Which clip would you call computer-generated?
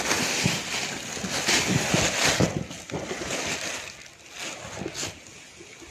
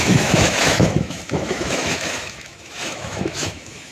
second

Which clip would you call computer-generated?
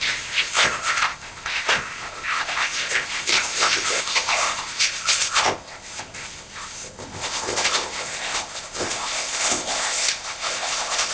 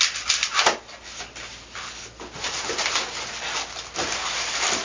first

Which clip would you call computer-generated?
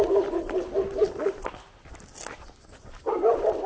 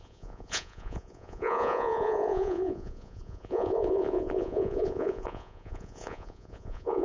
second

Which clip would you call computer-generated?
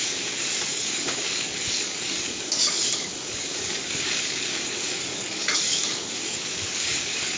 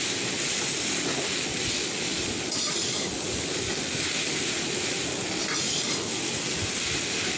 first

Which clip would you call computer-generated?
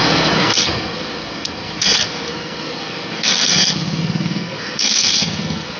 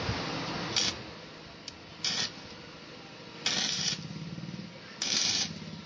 first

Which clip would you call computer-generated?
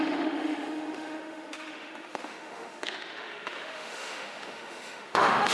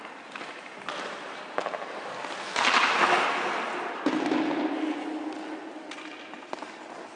first